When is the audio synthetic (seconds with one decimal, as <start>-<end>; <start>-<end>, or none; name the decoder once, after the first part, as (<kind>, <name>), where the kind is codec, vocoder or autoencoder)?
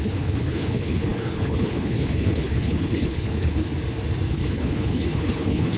0.0-3.6 (codec, HILCodec); 4.3-5.8